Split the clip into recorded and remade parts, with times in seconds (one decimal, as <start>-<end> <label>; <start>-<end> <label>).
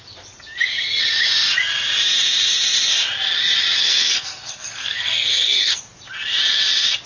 0.0-3.8 recorded; 3.8-5.8 remade; 5.8-7.1 recorded